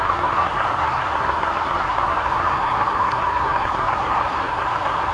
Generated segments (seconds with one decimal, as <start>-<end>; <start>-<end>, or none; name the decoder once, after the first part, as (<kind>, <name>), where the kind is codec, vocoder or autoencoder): 0.0-5.1 (codec, SNAC)